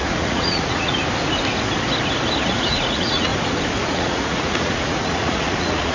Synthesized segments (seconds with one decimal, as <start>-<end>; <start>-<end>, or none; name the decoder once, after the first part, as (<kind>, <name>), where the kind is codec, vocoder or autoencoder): 0.0-1.0 (vocoder, Vocos); 2.4-3.3; 3.8-5.9